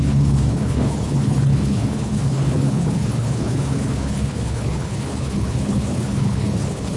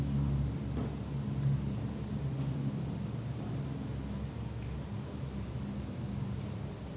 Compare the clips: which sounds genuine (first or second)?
second